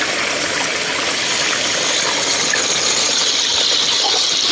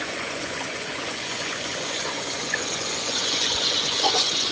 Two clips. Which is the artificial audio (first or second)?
second